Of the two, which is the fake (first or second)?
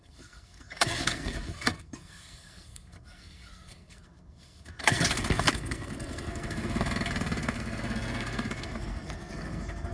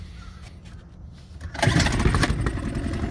first